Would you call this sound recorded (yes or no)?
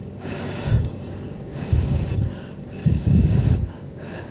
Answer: no